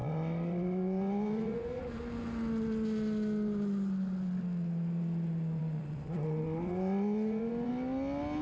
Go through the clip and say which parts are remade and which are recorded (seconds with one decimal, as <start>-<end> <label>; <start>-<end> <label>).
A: 0.0-1.9 remade; 1.9-5.6 recorded; 5.6-7.7 remade; 7.7-8.4 recorded